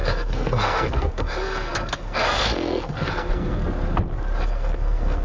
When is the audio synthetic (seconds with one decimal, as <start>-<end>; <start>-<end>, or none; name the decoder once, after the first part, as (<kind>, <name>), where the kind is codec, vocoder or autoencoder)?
0.0-3.6 (codec, SNAC); 4.4-5.2